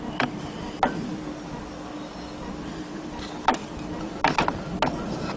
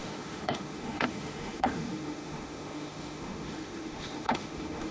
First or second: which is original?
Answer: first